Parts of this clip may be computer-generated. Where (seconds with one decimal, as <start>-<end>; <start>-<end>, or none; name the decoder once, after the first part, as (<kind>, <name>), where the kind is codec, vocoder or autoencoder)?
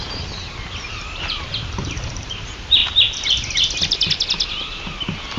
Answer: 0.0-2.8 (vocoder, BigVGAN v2)